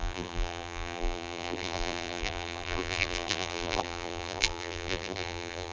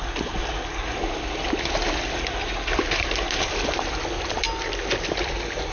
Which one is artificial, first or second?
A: first